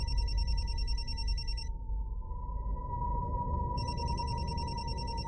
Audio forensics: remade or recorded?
remade